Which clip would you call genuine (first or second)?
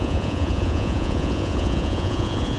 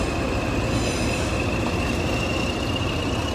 second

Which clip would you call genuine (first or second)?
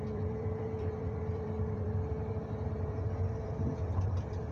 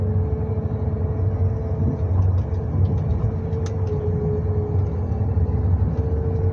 second